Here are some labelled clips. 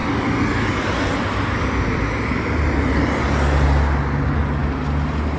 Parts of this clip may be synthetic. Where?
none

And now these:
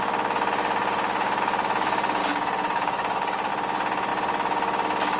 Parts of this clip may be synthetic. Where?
2.2-3.5

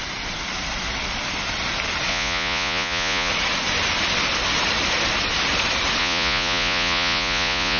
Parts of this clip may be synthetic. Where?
2.1-3.3; 6.0-7.8

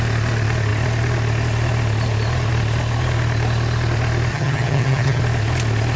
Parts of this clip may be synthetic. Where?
4.3-5.2